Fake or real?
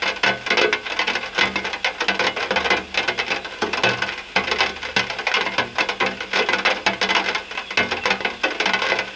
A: real